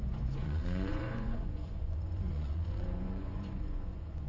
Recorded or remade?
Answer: remade